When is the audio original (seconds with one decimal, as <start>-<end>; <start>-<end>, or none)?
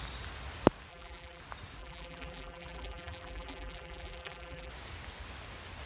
0.0-0.9; 1.4-1.8; 4.7-5.9